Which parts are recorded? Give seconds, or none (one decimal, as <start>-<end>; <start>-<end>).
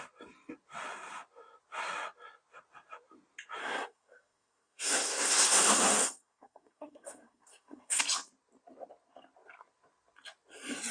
0.0-3.6; 8.0-10.9